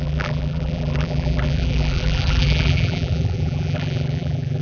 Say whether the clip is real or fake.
fake